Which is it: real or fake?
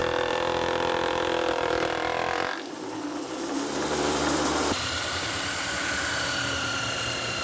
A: fake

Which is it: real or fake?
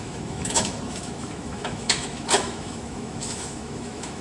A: fake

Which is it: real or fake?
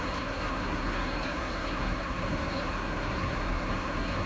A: fake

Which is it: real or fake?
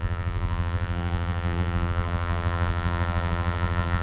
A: fake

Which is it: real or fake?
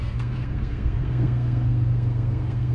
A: fake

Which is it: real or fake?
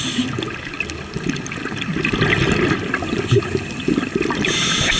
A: real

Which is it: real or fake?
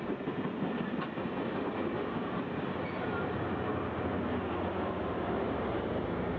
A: real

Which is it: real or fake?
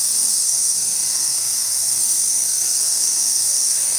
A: fake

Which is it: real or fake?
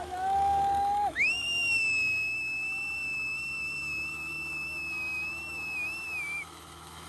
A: fake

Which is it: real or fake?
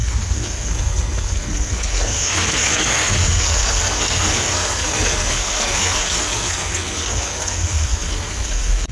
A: fake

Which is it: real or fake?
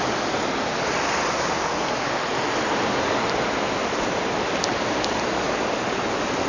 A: real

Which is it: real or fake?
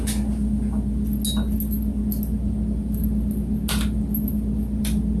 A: real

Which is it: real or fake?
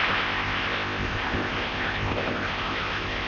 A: fake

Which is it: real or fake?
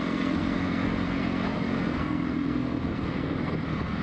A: fake